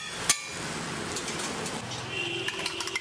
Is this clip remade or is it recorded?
recorded